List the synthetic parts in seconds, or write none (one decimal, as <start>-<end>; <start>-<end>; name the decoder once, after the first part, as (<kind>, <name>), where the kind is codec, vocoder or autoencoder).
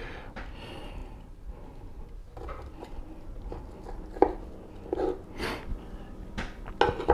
none